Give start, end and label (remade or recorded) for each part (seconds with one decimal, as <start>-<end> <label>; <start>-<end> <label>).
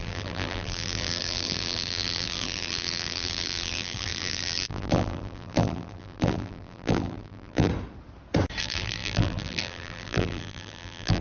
0.0-7.7 remade; 7.7-8.6 recorded; 8.6-11.2 remade